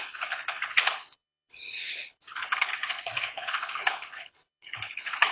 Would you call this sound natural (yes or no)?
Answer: no